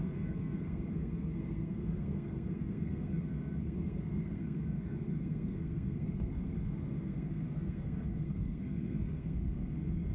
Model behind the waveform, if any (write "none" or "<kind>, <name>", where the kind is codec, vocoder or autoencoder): codec, SNAC